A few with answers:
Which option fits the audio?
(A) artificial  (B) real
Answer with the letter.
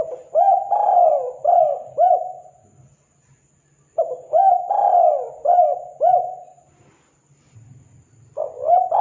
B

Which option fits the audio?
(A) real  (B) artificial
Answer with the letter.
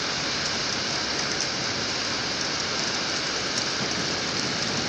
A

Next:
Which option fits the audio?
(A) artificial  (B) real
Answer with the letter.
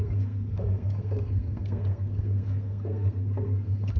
A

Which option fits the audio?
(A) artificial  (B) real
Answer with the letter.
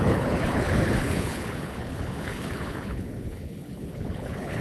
A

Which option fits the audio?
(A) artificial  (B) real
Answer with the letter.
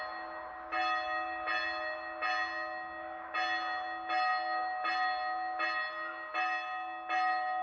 B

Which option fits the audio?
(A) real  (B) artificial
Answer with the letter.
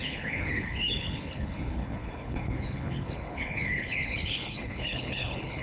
B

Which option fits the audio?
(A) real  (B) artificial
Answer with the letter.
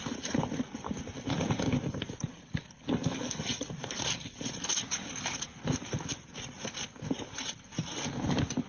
B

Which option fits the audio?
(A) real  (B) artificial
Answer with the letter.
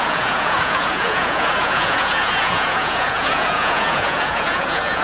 B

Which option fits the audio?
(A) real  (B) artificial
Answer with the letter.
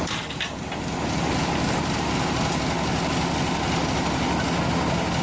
A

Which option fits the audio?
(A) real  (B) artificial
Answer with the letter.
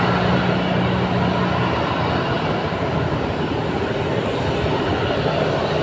A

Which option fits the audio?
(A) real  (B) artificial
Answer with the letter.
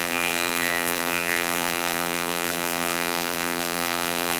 B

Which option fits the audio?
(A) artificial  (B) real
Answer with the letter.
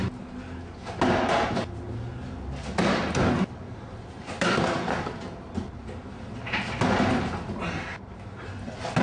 B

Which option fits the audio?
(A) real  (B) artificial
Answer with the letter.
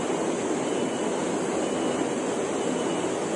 A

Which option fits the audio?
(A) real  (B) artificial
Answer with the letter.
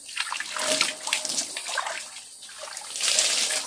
A